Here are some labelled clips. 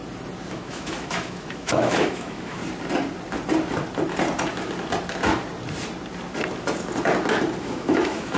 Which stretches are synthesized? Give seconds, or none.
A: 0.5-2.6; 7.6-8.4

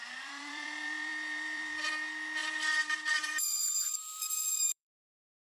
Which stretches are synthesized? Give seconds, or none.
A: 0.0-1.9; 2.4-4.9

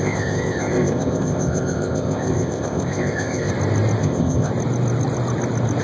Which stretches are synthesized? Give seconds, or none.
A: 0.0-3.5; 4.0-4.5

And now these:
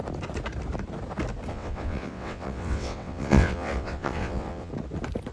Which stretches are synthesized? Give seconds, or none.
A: 1.5-4.7

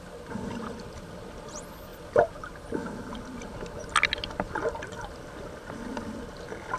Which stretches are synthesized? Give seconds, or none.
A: none

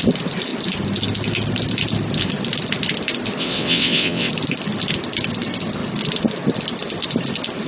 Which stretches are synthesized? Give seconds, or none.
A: 3.4-4.3

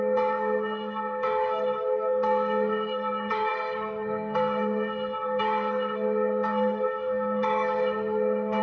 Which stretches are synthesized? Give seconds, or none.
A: 0.0-8.6

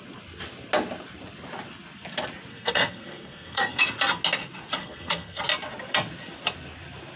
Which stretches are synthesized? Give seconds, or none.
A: 2.5-3.8; 4.8-5.4